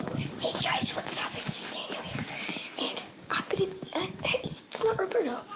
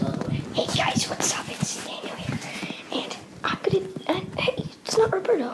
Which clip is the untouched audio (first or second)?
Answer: second